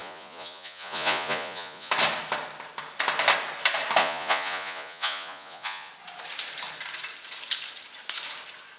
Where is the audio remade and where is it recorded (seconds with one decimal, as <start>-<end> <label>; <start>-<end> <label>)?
0.0-1.9 remade; 1.9-4.0 recorded; 4.0-5.9 remade; 5.9-8.8 recorded